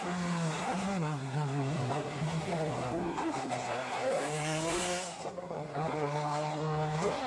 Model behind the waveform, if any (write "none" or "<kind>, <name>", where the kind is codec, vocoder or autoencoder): codec, SNAC